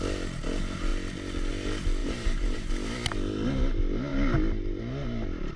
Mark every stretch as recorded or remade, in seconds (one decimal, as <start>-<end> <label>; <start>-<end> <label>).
0.0-2.0 recorded; 2.0-2.7 remade; 2.7-5.6 recorded